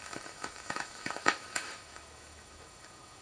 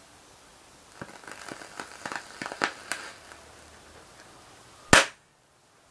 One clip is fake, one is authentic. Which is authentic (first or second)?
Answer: second